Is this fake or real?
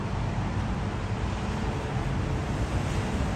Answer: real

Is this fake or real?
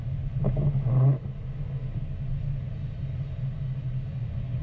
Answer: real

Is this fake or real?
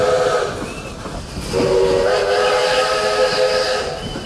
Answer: real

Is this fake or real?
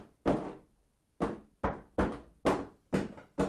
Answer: real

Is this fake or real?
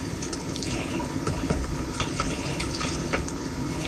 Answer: fake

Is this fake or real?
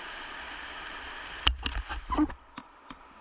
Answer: real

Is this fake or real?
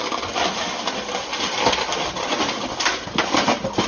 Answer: real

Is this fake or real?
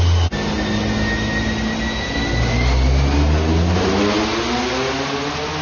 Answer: real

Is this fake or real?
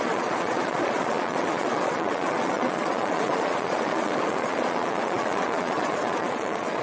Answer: fake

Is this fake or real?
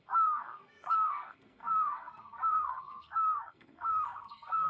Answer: fake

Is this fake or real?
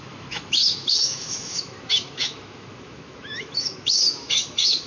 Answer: fake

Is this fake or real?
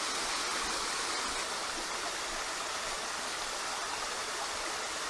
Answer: real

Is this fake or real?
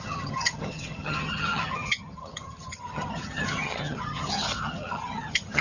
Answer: fake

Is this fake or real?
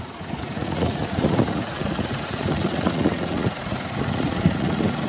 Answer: fake